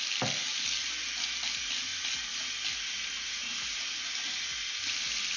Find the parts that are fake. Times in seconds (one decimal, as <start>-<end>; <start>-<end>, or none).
none